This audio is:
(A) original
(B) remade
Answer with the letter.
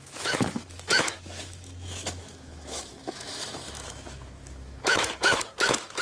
B